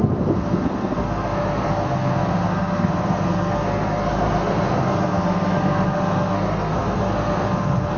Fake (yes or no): yes